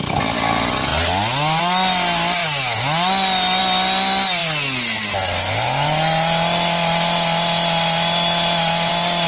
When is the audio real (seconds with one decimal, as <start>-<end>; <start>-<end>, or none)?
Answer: 0.0-9.3